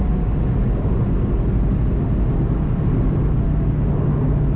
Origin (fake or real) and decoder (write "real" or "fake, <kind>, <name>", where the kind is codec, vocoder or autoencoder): real